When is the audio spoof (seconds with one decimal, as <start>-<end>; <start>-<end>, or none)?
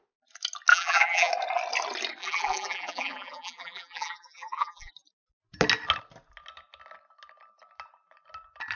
0.7-1.3; 2.2-4.9